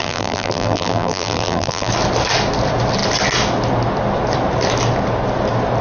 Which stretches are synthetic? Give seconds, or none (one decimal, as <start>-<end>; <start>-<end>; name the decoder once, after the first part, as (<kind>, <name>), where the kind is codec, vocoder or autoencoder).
0.0-1.9 (vocoder, BigVGAN v2)